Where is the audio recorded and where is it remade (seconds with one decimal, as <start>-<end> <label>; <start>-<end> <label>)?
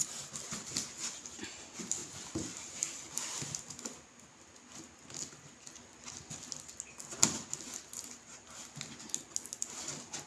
0.0-10.3 recorded